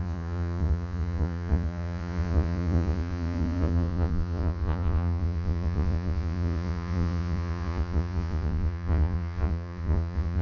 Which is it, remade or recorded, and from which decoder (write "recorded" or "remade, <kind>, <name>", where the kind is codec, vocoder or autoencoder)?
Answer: remade, vocoder, Vocos